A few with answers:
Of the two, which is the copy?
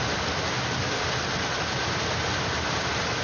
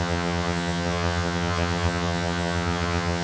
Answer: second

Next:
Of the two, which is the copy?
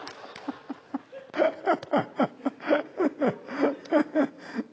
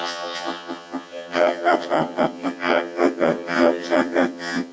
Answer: second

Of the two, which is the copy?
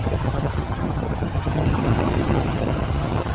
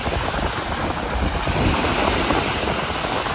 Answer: first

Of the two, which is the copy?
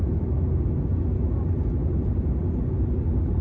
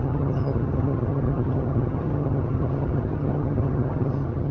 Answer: second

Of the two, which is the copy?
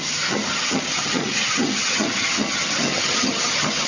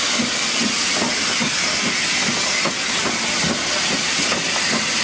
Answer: first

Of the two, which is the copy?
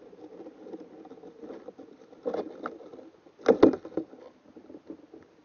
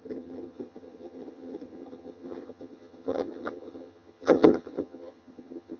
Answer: second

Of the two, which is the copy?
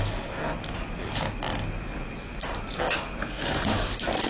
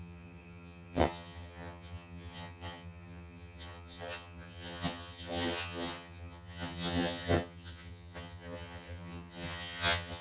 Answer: second